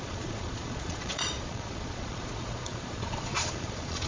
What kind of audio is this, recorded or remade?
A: remade